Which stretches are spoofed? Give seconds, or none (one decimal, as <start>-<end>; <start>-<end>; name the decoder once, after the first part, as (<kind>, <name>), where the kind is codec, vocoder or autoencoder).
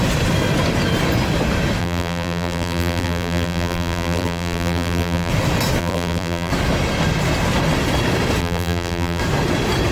1.8-5.3 (vocoder, BigVGAN v2); 5.8-6.5; 8.4-9.2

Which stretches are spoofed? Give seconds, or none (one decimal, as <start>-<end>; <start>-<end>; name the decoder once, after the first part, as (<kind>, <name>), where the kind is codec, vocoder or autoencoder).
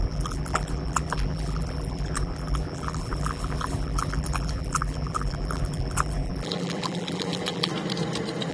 0.0-7.7 (vocoder, BigVGAN v2)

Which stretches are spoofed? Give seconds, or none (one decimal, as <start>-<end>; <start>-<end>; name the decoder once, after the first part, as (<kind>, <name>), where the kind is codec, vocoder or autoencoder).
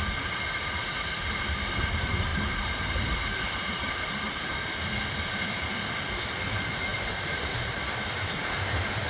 2.3-4.1 (vocoder, BigVGAN v2); 6.9-7.8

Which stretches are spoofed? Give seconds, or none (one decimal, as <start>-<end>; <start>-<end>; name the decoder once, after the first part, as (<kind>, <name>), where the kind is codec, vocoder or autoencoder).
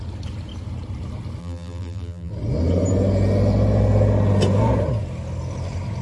1.4-2.3 (vocoder, BigVGAN v2)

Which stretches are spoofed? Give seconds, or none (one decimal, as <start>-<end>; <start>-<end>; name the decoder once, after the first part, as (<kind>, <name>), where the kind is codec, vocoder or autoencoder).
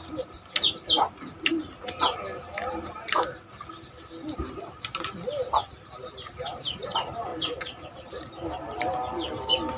7.3-8.3 (vocoder, BigVGAN v2)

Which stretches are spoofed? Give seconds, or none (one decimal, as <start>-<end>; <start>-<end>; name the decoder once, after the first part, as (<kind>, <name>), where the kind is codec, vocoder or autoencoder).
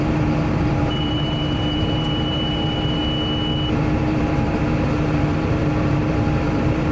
0.0-3.0 (vocoder, BigVGAN v2); 3.7-6.9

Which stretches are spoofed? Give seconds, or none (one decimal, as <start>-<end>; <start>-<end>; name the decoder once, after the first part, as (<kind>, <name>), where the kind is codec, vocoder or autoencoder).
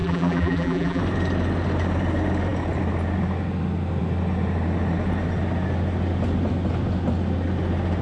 0.0-1.0 (vocoder, BigVGAN v2)